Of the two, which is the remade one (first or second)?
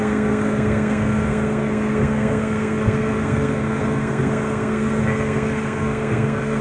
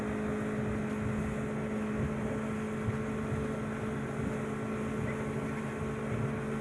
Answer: first